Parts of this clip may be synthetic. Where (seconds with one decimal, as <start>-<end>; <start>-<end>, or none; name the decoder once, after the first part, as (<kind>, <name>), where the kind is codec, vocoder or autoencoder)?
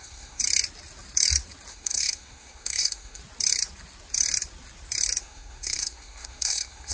0.0-0.4 (codec, SNAC); 1.7-3.2; 5.2-6.9